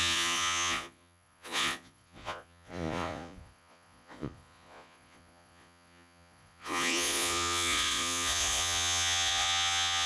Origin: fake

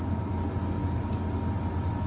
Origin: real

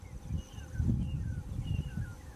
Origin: real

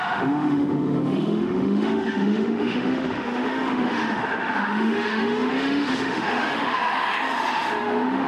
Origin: fake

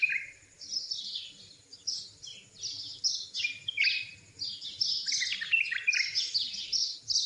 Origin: real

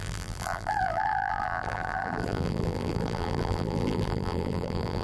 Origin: fake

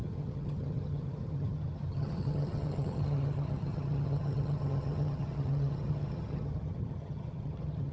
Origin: fake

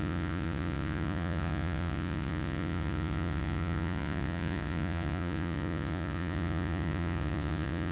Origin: fake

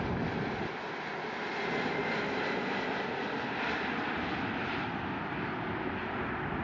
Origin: real